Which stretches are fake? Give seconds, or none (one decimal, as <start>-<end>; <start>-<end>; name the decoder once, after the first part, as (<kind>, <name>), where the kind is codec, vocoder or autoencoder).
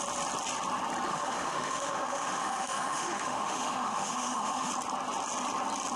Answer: 1.1-4.7 (autoencoder, DAC-VAE)